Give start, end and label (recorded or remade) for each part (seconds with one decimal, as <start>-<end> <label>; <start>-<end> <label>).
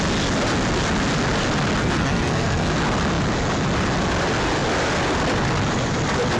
0.0-1.8 recorded; 1.8-2.7 remade; 2.7-6.4 recorded